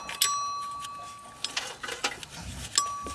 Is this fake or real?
real